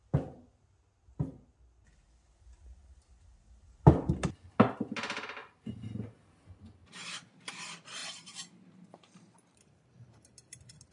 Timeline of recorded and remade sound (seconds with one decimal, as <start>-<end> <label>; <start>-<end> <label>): 0.0-5.4 recorded; 5.4-6.3 remade; 6.3-6.8 recorded; 6.8-7.5 remade; 7.5-8.0 recorded; 8.0-10.1 remade; 10.1-10.9 recorded